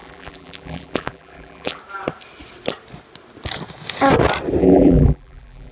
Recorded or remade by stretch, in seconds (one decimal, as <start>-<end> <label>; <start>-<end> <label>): 0.0-1.8 remade; 1.8-4.6 recorded; 4.6-5.7 remade